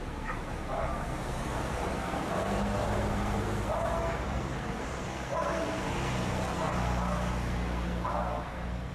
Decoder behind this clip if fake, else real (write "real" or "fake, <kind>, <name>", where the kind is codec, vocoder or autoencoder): fake, codec, SNAC